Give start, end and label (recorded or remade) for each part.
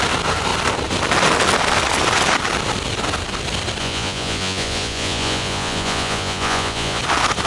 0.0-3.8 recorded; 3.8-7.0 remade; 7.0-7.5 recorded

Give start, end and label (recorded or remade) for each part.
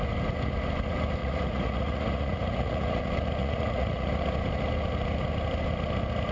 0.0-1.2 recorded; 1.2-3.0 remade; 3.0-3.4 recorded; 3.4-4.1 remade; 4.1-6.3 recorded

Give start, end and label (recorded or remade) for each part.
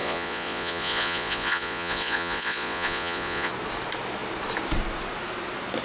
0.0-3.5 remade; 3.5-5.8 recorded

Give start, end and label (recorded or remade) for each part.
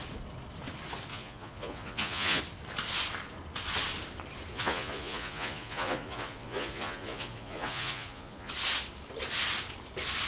0.0-1.1 recorded; 1.1-2.4 remade; 2.4-4.5 recorded; 4.5-8.5 remade; 8.5-10.3 recorded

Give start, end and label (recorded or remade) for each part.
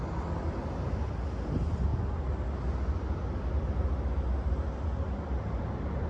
0.0-6.1 recorded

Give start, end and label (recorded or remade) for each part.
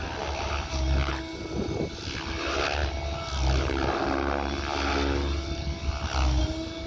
0.0-6.9 recorded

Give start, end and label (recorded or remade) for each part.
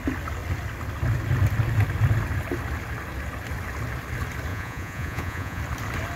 0.0-4.5 recorded; 4.5-5.6 remade; 5.6-6.2 recorded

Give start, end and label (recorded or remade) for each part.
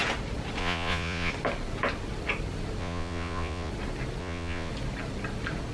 0.0-0.6 recorded; 0.6-1.3 remade; 1.3-2.8 recorded; 2.8-3.7 remade; 3.7-4.2 recorded; 4.2-4.7 remade; 4.7-5.7 recorded